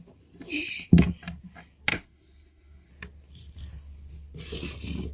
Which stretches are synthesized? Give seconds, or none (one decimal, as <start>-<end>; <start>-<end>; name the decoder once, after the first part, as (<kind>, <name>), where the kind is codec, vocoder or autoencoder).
1.9-2.9 (codec, SNAC)

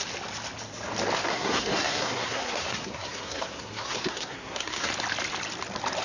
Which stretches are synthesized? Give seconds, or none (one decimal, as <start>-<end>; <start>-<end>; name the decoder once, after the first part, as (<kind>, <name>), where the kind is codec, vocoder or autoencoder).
1.3-4.9 (codec, SNAC)

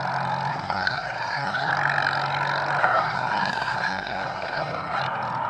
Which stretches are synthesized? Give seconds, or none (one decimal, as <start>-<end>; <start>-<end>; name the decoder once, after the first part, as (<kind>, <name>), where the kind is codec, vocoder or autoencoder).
0.5-1.7 (codec, SNAC); 2.8-5.0

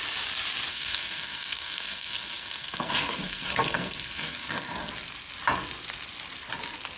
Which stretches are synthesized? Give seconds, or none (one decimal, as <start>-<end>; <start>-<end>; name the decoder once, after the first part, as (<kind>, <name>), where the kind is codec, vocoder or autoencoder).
0.7-4.9 (codec, SNAC)